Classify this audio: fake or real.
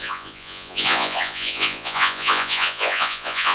fake